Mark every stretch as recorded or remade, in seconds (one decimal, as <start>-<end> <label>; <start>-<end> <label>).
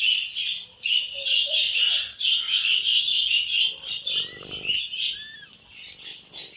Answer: 0.0-6.6 recorded